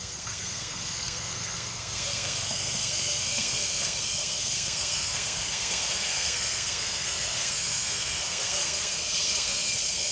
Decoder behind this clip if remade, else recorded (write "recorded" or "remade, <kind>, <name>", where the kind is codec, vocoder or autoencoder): remade, codec, SNAC